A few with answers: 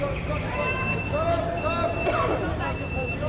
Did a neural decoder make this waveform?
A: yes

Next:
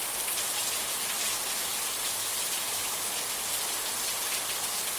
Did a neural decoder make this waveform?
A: no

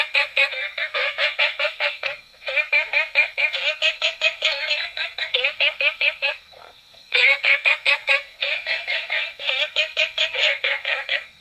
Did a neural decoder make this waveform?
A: yes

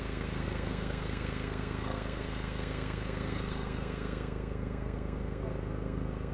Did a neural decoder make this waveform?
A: yes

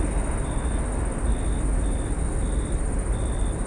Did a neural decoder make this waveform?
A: no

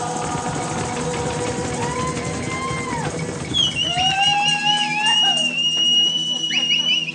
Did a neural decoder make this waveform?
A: no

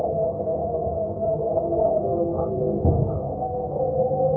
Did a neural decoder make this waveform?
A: yes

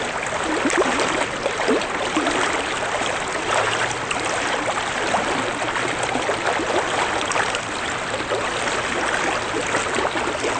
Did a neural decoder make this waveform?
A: no